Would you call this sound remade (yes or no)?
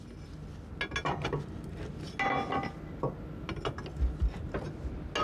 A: no